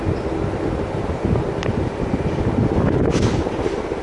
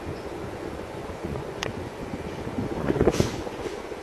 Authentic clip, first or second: first